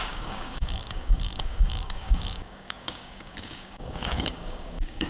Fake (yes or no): yes